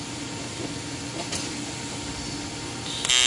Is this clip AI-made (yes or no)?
no